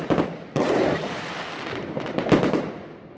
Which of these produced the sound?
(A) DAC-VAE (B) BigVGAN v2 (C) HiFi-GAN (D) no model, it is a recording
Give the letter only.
D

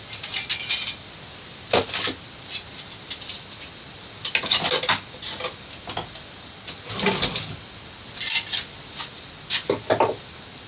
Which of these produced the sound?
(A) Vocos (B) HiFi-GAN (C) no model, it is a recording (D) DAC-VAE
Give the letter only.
C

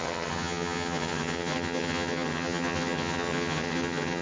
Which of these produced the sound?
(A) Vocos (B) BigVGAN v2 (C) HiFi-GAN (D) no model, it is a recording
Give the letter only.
C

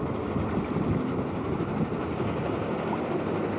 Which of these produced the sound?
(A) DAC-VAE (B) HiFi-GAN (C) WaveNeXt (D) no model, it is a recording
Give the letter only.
D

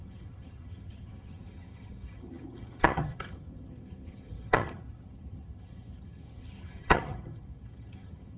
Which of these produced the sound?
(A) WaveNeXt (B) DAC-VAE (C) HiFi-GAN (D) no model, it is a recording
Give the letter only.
C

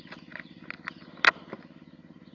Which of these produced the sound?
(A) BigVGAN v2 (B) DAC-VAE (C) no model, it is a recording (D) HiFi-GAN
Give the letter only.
C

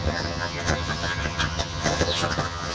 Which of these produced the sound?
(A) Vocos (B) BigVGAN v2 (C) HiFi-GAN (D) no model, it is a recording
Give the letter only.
C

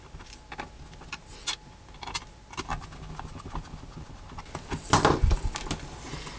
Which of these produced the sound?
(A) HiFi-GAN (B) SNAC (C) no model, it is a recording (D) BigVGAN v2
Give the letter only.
C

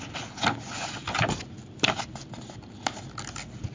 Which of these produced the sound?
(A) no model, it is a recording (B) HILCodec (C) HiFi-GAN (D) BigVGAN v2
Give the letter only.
A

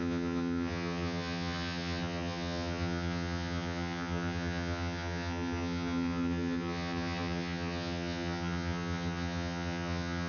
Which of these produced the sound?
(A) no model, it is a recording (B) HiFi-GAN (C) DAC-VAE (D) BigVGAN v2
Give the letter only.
B